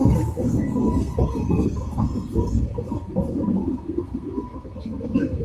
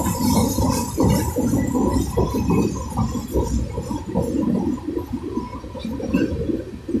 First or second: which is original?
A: second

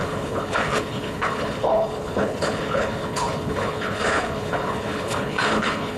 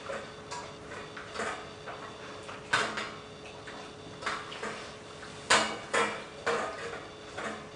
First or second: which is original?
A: second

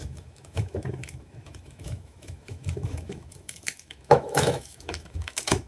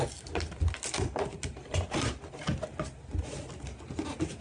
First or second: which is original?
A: second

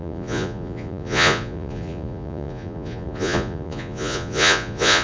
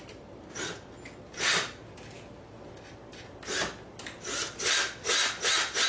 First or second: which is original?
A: second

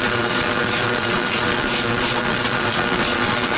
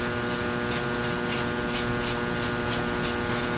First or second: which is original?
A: second